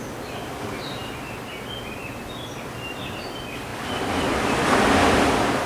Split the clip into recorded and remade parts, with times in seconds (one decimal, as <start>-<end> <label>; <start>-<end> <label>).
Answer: 0.0-5.7 recorded